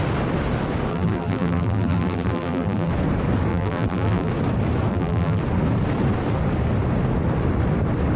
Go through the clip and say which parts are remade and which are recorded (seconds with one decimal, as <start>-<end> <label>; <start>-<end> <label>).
0.0-0.9 recorded; 0.9-2.9 remade; 2.9-3.5 recorded; 3.5-4.3 remade; 4.3-4.9 recorded; 4.9-5.4 remade; 5.4-8.2 recorded